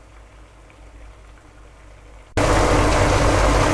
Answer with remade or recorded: recorded